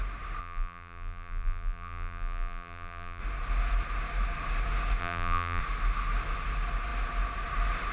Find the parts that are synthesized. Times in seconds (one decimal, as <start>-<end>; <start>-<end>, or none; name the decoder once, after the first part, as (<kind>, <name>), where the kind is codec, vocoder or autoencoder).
0.4-3.2 (vocoder, BigVGAN v2); 5.0-5.6